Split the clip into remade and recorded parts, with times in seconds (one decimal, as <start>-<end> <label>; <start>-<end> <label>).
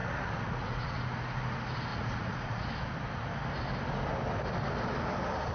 0.0-1.0 remade; 1.0-1.9 recorded; 1.9-2.6 remade; 2.6-5.5 recorded